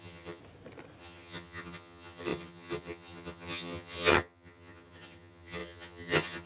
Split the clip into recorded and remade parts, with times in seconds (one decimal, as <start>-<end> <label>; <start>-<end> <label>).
0.0-0.4 remade; 0.4-1.0 recorded; 1.0-6.5 remade